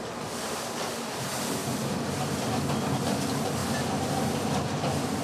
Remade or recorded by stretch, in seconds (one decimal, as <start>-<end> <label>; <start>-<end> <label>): 0.0-5.2 recorded